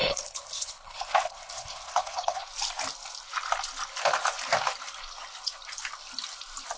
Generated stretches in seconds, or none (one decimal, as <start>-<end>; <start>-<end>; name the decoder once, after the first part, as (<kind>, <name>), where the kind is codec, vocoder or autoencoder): 0.0-2.4 (codec, HILCodec)